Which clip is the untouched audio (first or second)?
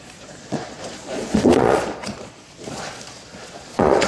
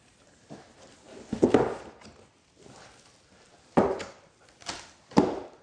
second